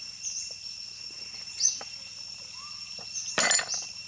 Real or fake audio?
real